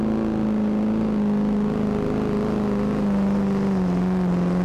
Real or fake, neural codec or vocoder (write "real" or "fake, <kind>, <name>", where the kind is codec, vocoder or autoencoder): real